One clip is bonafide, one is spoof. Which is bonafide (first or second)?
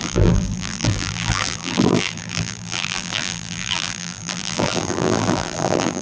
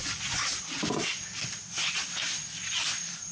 second